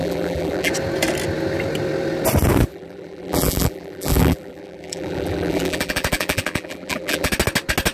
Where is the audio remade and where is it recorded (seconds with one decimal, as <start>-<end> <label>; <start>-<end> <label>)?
0.0-0.7 remade; 0.7-2.7 recorded; 2.7-7.3 remade; 7.3-7.9 recorded